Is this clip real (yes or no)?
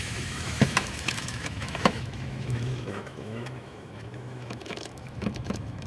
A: no